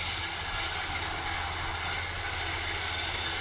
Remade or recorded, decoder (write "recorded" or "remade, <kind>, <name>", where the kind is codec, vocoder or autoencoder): recorded